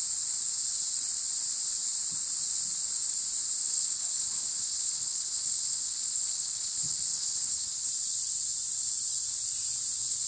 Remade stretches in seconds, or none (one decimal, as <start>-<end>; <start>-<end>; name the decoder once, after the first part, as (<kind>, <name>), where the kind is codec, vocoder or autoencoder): 3.6-7.9 (codec, HILCodec)